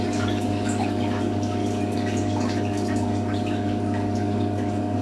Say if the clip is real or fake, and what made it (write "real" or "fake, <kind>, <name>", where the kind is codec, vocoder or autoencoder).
fake, codec, DAC